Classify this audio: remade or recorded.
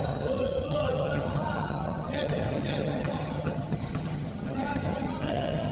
remade